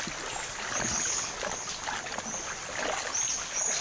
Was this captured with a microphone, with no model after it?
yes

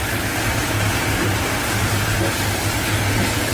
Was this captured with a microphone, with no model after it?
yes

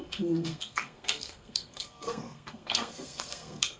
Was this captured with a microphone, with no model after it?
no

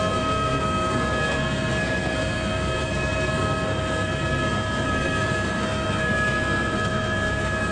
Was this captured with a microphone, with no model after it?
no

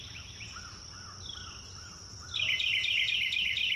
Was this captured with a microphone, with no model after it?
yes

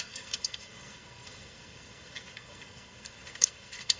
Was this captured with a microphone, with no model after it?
no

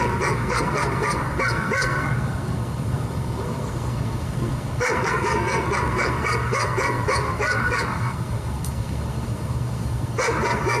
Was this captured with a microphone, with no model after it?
no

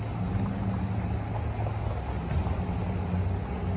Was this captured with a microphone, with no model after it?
yes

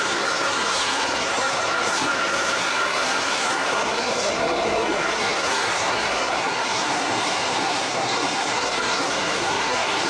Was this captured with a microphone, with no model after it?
no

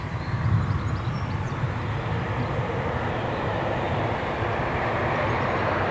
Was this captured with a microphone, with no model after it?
yes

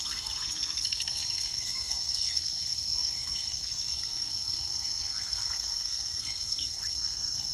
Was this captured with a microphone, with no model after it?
no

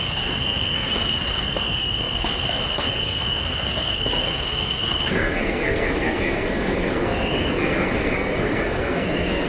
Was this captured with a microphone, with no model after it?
no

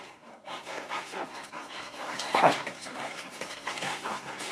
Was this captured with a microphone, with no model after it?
no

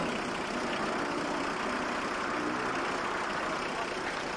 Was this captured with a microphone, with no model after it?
yes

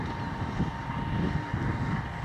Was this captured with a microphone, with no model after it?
yes